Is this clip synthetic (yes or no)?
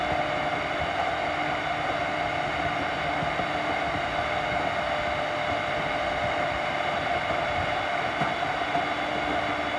no